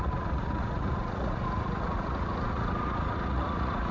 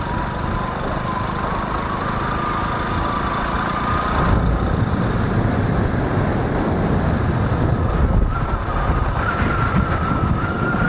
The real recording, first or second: second